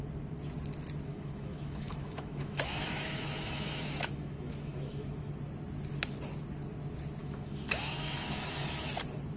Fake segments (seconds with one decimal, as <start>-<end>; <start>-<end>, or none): 1.1-5.3; 7.2-8.9